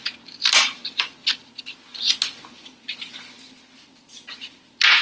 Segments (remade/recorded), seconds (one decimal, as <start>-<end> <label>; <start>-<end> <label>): 0.0-5.0 recorded